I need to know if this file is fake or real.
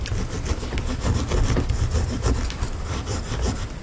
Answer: real